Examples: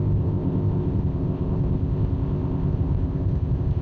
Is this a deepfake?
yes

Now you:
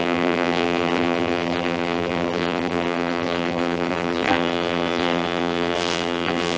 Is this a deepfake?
yes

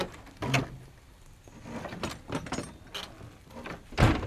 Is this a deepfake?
no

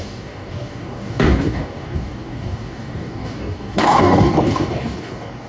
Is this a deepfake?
yes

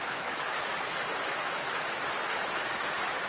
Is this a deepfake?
yes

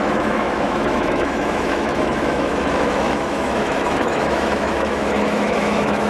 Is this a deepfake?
yes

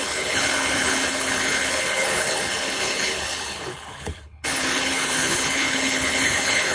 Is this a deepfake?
yes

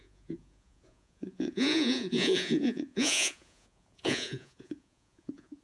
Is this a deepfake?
yes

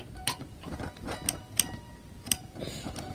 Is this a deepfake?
yes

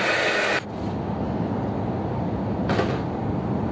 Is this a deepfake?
no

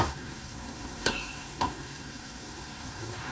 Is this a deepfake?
yes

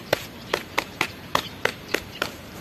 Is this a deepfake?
yes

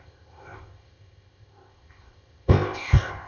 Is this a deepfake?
yes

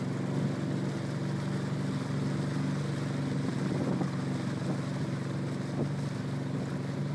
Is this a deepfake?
no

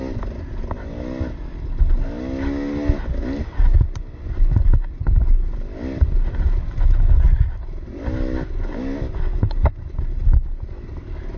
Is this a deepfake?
no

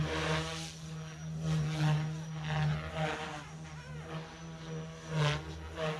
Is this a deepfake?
no